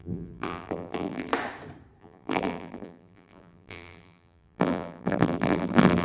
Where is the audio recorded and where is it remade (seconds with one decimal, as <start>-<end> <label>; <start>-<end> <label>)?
0.0-1.3 remade; 1.3-2.0 recorded; 2.0-6.0 remade